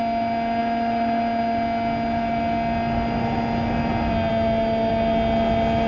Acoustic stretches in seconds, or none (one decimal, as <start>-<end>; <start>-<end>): 0.0-5.9